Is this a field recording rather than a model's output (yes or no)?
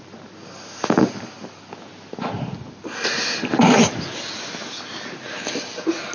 yes